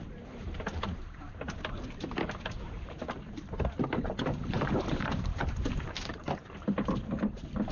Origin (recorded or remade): remade